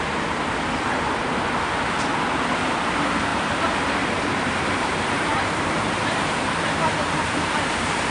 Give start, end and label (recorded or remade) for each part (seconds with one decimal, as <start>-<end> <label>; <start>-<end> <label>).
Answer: 0.0-3.3 recorded; 3.3-8.1 remade